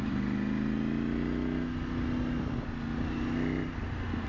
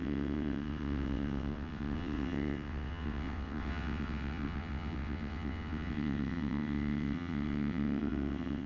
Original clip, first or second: first